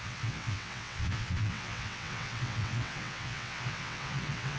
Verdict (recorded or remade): remade